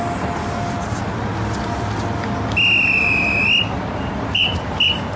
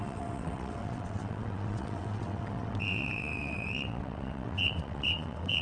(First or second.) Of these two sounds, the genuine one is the first